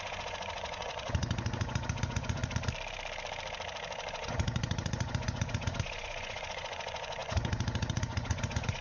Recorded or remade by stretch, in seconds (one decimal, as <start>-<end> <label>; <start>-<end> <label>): 0.0-2.4 remade; 2.4-4.1 recorded; 4.1-8.8 remade